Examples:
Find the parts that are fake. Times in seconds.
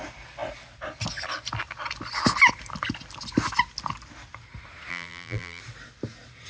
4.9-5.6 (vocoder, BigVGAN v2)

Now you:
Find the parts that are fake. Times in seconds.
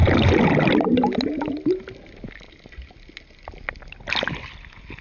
0.0-0.7 (vocoder, BigVGAN v2)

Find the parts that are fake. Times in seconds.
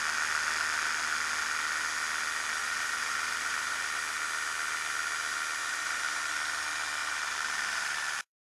2.6-4.0 (vocoder, BigVGAN v2); 5.6-6.3; 7.0-8.6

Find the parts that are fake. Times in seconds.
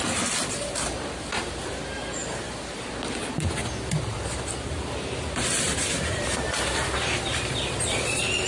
3.6-8.5 (vocoder, BigVGAN v2)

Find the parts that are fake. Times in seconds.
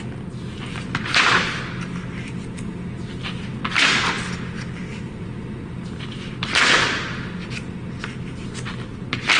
none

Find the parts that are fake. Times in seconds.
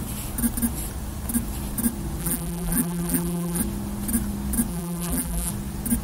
2.2-3.6 (vocoder, BigVGAN v2); 4.7-5.5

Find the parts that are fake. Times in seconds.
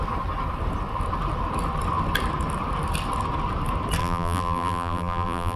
4.0-5.6 (vocoder, BigVGAN v2)